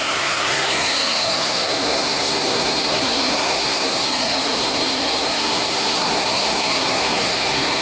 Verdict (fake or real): fake